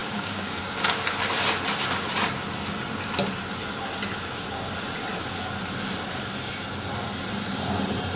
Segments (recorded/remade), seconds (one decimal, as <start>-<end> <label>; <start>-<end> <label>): 0.0-0.7 remade; 0.7-8.2 recorded

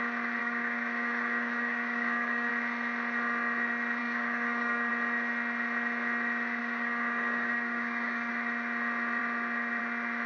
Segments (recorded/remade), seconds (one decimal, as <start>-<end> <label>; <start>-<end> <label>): 0.0-0.4 recorded; 0.4-2.5 remade; 2.5-4.0 recorded; 4.0-4.9 remade; 4.9-6.6 recorded; 6.6-8.3 remade; 8.3-10.3 recorded